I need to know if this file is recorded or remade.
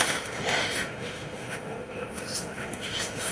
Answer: remade